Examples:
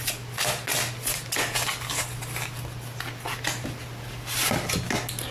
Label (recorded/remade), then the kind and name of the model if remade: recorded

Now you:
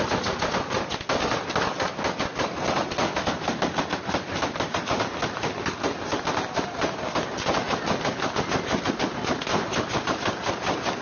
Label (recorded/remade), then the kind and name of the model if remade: recorded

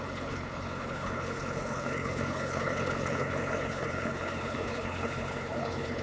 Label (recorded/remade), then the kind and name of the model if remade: remade, codec, HILCodec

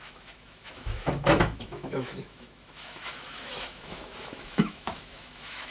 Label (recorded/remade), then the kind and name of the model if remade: remade, autoencoder, DAC-VAE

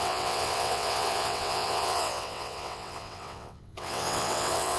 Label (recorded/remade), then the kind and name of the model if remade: remade, vocoder, WaveNeXt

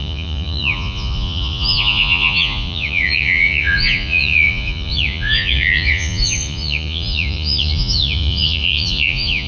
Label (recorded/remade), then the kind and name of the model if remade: remade, vocoder, Vocos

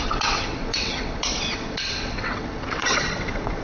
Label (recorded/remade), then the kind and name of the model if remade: remade, vocoder, WaveNeXt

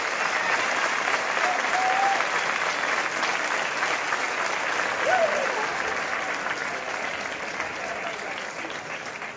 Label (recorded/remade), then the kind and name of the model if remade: recorded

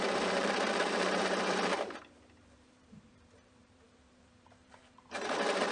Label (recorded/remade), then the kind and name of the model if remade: remade, vocoder, BigVGAN v2